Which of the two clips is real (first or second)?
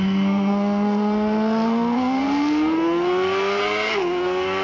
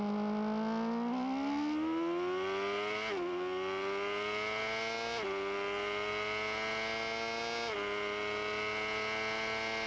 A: second